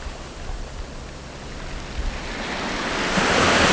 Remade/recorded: recorded